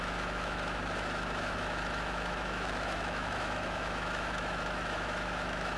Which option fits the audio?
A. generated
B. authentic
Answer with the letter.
A